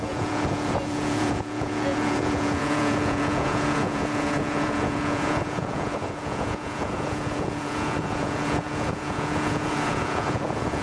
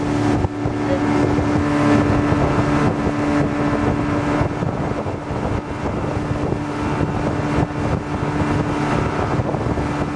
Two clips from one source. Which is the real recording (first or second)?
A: second